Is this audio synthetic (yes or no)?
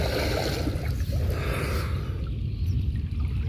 no